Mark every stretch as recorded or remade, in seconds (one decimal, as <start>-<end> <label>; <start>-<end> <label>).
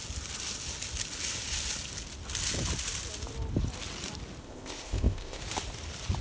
0.0-4.4 recorded; 4.4-5.4 remade; 5.4-6.2 recorded